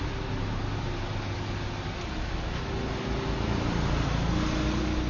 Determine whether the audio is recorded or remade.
recorded